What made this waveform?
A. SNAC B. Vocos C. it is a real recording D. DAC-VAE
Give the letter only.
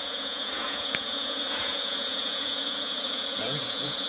B